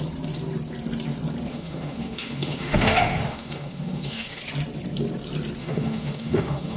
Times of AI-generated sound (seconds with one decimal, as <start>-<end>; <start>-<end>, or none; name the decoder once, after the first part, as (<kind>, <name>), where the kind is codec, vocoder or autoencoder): 1.5-4.4 (autoencoder, DAC-VAE); 5.6-6.8